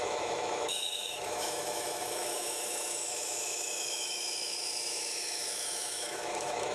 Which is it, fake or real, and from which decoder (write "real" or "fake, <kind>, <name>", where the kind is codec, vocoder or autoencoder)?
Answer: fake, autoencoder, DAC-VAE